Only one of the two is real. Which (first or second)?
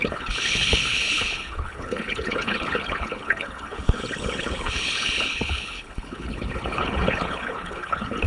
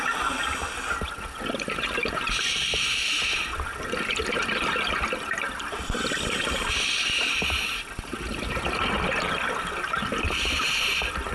second